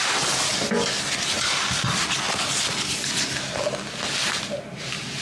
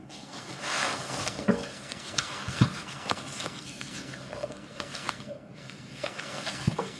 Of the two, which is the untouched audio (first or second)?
first